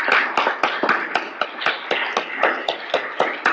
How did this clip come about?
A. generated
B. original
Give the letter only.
B